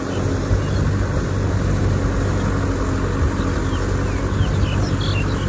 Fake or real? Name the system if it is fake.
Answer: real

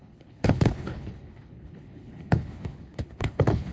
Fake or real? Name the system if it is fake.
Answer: fake, codec, HILCodec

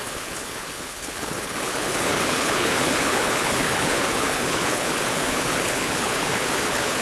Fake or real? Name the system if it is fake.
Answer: fake, codec, HILCodec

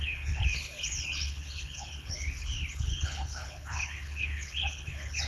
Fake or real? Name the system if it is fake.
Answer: fake, codec, HILCodec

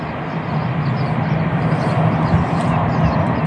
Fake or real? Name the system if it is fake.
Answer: real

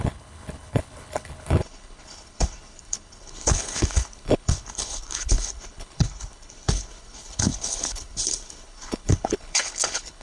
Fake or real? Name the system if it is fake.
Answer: fake, codec, HILCodec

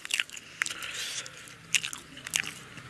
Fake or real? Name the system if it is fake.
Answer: real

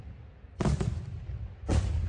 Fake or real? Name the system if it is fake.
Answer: real